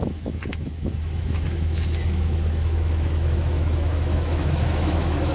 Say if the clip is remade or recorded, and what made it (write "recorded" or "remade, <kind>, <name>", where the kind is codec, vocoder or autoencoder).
remade, autoencoder, DAC-VAE